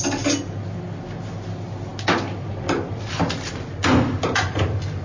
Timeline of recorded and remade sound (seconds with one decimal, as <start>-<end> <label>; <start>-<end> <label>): 0.0-5.0 recorded